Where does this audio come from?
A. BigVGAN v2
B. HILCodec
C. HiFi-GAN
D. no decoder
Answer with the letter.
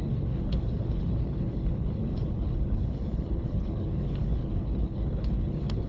B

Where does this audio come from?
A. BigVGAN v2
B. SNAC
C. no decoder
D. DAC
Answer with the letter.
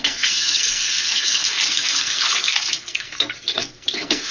B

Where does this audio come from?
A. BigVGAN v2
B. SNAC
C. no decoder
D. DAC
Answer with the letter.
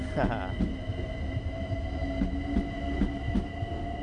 C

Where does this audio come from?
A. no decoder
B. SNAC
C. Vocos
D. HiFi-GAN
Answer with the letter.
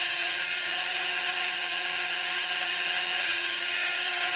D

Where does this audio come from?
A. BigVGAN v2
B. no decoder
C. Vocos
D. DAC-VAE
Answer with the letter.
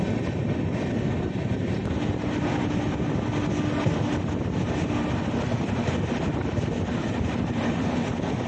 B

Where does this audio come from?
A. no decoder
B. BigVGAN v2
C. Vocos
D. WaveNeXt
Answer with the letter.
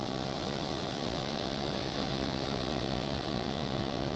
D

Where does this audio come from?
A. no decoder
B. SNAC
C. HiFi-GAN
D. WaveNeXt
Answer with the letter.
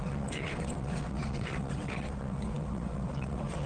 D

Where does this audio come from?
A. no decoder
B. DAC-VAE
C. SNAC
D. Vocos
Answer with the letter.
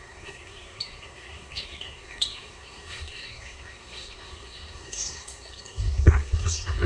C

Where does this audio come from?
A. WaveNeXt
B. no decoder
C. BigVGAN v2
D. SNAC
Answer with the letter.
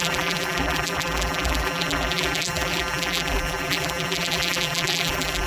C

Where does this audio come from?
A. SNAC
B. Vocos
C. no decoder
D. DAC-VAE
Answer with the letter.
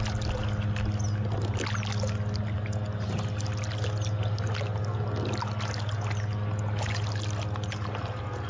C